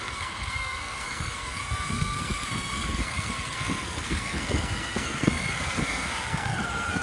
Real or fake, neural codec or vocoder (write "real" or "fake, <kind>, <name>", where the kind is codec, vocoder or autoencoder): fake, codec, SNAC